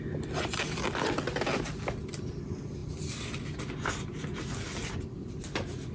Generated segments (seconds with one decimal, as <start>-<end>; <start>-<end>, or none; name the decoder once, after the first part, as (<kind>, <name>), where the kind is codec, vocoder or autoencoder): none